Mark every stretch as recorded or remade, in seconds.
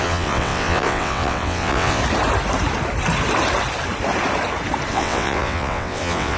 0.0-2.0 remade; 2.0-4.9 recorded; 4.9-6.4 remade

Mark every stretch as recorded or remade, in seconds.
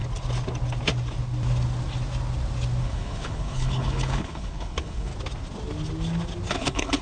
0.0-2.8 recorded; 2.8-5.1 remade; 5.1-6.5 recorded; 6.5-7.0 remade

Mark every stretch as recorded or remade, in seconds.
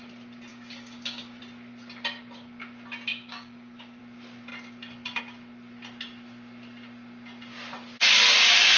0.0-0.5 recorded; 0.5-1.4 remade; 1.4-3.1 recorded; 3.1-4.0 remade; 4.0-8.8 recorded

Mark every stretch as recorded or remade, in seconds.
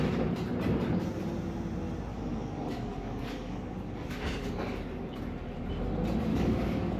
0.0-2.1 recorded; 2.1-5.2 remade; 5.2-6.3 recorded; 6.3-7.0 remade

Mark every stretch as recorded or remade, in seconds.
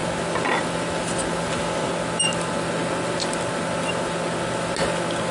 0.0-5.3 recorded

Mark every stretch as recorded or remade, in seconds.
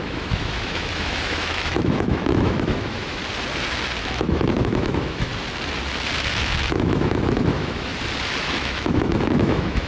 0.0-3.2 remade; 3.2-4.0 recorded; 4.0-5.3 remade; 5.3-6.4 recorded; 6.4-7.9 remade; 7.9-8.4 recorded; 8.4-9.9 remade